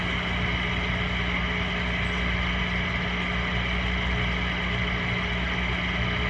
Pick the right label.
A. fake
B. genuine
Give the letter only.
B